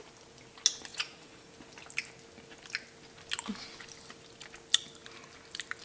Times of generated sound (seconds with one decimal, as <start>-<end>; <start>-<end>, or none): 0.9-1.5